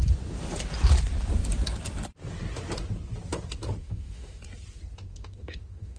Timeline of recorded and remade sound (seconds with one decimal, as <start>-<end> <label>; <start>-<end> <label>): 0.0-3.8 recorded; 3.8-4.4 remade; 4.4-5.1 recorded; 5.1-6.0 remade